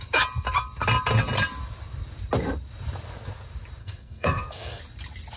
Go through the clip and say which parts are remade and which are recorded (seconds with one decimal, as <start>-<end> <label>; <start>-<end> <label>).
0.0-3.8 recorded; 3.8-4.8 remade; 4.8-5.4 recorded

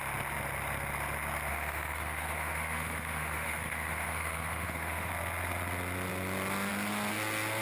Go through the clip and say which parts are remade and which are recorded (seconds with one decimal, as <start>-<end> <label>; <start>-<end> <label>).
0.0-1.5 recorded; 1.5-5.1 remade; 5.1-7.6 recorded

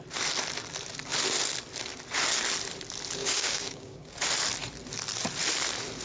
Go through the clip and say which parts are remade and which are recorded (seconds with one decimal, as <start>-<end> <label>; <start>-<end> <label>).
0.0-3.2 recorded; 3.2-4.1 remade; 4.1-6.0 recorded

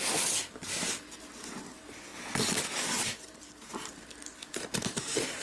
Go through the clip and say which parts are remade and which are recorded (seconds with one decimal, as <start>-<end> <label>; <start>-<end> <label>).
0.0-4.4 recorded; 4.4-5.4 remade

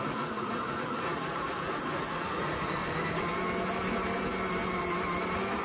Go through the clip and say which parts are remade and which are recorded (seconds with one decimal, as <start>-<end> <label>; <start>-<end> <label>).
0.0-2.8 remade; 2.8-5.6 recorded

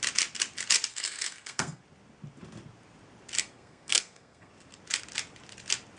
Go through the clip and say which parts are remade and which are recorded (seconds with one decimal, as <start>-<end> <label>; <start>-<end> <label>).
0.0-0.9 recorded; 0.9-1.8 remade; 1.8-3.4 recorded; 3.4-4.5 remade; 4.5-6.0 recorded

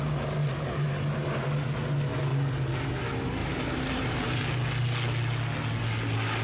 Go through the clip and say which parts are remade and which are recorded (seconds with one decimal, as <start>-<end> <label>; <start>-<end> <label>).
0.0-0.4 recorded; 0.4-1.0 remade; 1.0-2.3 recorded; 2.3-2.9 remade; 2.9-3.4 recorded; 3.4-4.4 remade; 4.4-6.4 recorded

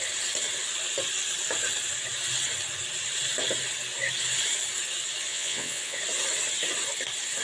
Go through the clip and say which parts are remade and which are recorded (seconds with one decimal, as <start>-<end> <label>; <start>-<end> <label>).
0.0-5.3 recorded; 5.3-6.0 remade; 6.0-7.4 recorded